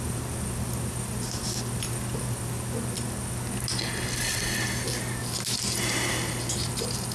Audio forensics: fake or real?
real